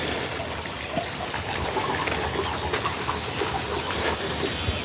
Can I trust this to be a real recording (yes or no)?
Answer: yes